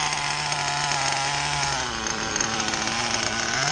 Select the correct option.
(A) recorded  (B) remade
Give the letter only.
A